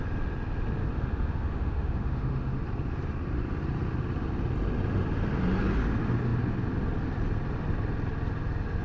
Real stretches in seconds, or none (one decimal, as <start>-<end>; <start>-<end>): 0.0-0.8; 2.6-8.8